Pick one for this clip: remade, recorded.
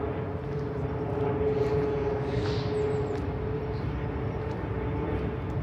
recorded